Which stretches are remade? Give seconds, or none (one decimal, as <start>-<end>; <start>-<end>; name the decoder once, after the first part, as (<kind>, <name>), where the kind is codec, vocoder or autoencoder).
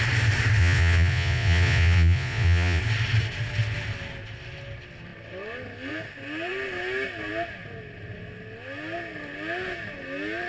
0.6-2.8 (vocoder, Vocos)